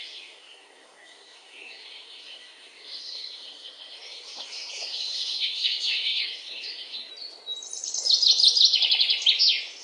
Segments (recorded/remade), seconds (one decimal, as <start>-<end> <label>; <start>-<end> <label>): 0.0-7.1 remade; 7.1-9.8 recorded